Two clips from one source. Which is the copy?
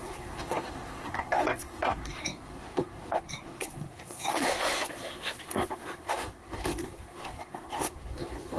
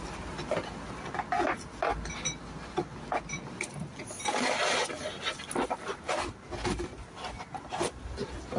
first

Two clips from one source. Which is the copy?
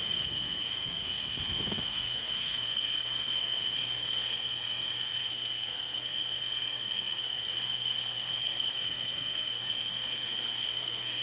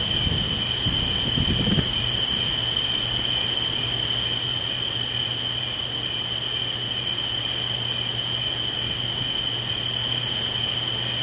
first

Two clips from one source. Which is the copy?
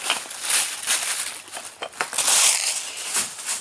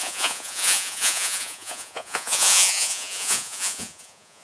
second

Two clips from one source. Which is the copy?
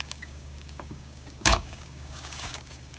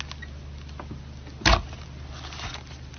first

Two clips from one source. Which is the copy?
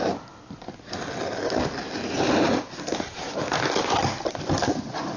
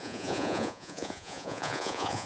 second